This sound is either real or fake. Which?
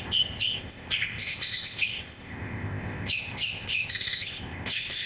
fake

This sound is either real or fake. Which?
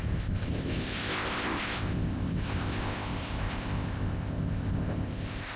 fake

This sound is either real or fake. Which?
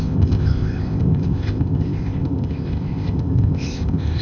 fake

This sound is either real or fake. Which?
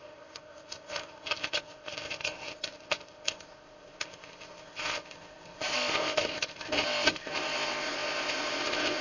fake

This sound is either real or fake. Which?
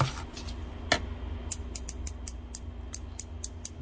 real